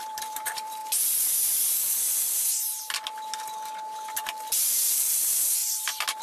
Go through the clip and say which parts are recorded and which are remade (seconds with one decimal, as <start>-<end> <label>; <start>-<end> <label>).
0.0-0.8 remade; 0.8-4.5 recorded; 4.5-5.6 remade; 5.6-6.2 recorded